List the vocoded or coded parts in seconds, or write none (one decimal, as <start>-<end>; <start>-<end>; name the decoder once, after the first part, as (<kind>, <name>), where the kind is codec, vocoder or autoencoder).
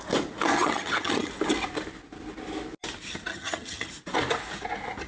0.5-1.3 (vocoder, HiFi-GAN); 3.3-3.9